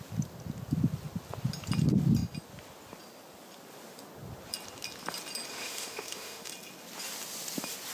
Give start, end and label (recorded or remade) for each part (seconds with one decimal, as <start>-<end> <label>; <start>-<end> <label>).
0.0-5.5 recorded; 5.5-6.5 remade; 6.5-7.9 recorded